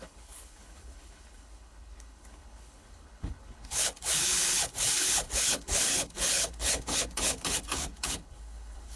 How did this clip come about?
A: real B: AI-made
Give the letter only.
B